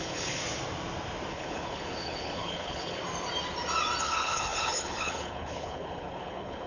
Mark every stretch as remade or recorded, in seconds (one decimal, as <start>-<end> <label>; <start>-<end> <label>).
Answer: 0.0-0.4 remade; 0.4-1.3 recorded; 1.3-3.0 remade; 3.0-4.0 recorded; 4.0-6.7 remade